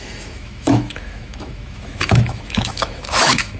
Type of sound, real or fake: fake